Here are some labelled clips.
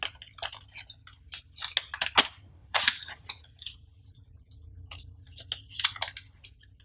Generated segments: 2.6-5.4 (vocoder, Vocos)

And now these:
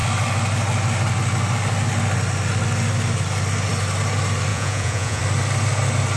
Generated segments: 4.5-5.2 (vocoder, Vocos)

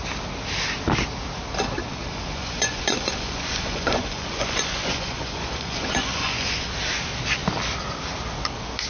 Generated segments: 2.0-6.7 (vocoder, Vocos)

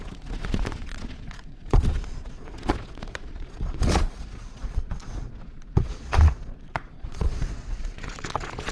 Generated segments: 0.0-8.7 (vocoder, Vocos)